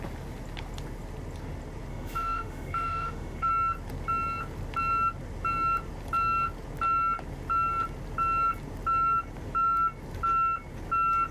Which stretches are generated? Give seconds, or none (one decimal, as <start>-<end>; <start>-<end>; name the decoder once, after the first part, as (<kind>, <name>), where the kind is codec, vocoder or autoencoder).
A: 1.9-3.5 (autoencoder, DAC-VAE)